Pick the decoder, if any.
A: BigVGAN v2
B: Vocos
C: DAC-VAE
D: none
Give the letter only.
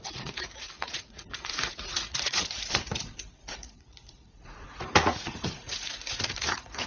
B